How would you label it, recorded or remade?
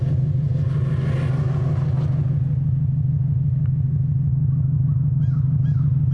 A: recorded